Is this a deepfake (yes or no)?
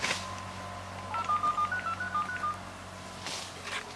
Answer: no